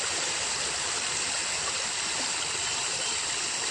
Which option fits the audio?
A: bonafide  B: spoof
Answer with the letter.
B